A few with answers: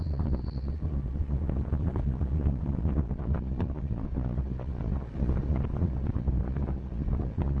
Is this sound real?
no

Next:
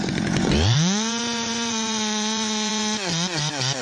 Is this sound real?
no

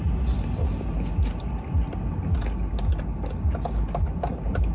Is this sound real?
yes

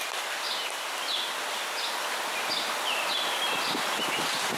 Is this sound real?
yes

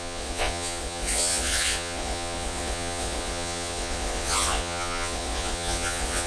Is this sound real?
no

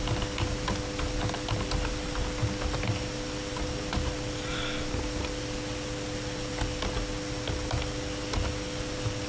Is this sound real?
yes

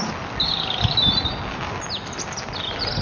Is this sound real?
yes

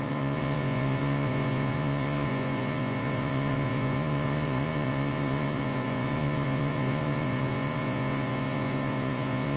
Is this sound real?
no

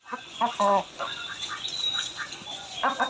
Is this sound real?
no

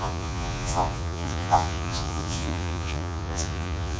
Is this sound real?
no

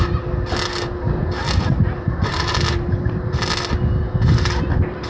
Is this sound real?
yes